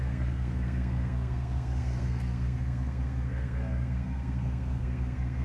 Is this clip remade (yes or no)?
yes